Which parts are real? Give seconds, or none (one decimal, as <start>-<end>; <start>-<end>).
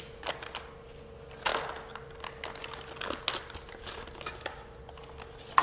0.0-5.6